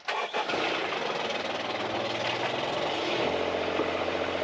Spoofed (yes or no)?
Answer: no